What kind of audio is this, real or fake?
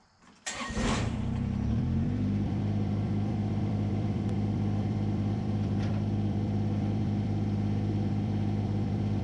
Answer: fake